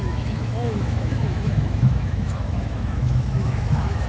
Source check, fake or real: fake